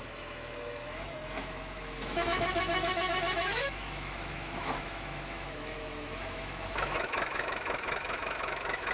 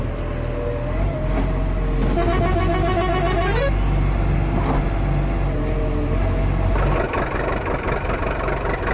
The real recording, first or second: second